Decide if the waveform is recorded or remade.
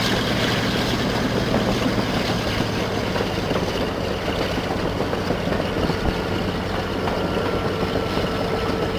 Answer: recorded